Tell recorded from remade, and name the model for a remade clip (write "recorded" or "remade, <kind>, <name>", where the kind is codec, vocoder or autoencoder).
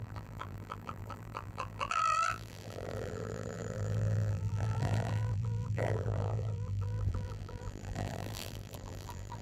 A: remade, vocoder, BigVGAN v2